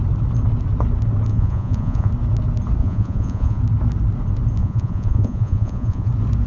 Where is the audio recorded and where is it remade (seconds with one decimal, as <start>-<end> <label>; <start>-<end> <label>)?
0.0-1.3 recorded; 1.3-2.1 remade; 2.1-2.8 recorded; 2.8-3.6 remade; 3.6-4.6 recorded; 4.6-6.1 remade; 6.1-6.5 recorded